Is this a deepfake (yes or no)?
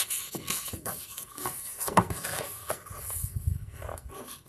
yes